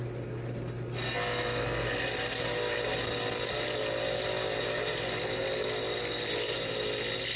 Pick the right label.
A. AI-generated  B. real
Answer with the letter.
B